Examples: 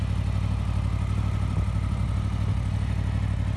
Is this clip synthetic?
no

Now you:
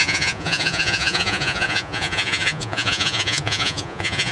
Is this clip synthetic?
yes